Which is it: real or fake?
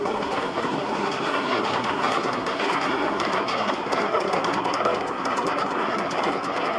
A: fake